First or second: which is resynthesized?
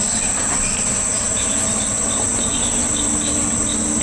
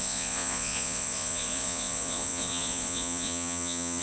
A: second